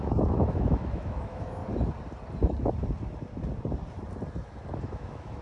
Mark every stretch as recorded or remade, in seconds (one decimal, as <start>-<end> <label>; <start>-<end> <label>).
0.0-1.6 remade; 1.6-4.8 recorded; 4.8-5.4 remade